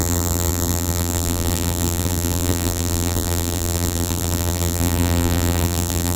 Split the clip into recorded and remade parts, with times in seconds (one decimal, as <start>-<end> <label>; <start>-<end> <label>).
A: 0.0-6.2 remade